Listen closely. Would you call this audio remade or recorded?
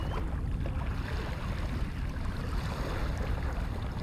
recorded